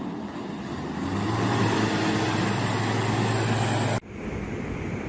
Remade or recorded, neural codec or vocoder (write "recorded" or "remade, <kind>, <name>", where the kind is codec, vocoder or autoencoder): recorded